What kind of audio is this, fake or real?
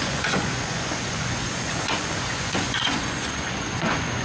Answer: fake